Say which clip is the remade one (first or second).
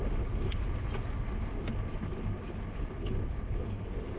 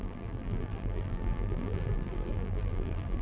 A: second